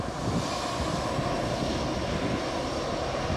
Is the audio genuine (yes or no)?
yes